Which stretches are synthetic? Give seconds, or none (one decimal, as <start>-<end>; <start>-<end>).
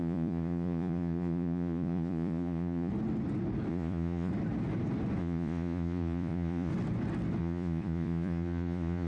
0.0-2.9; 3.7-4.3; 5.2-6.7; 7.4-9.1